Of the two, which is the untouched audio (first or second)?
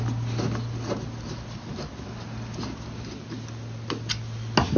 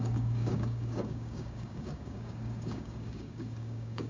first